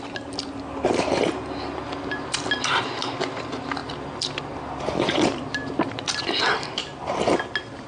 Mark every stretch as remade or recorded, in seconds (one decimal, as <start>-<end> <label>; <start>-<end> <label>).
0.0-7.9 recorded